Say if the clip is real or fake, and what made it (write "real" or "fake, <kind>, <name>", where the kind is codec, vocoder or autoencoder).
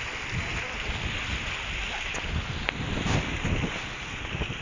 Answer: real